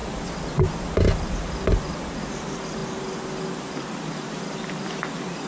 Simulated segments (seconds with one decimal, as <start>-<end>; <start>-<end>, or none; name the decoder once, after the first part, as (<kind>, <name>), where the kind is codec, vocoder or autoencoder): none